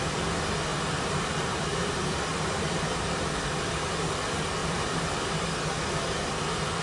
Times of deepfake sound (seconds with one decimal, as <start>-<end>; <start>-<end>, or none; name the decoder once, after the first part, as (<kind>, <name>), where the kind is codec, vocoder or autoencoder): 0.7-3.6 (vocoder, BigVGAN v2); 4.6-5.8